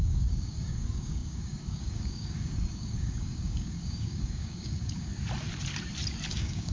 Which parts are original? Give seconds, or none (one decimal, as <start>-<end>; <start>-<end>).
5.1-6.3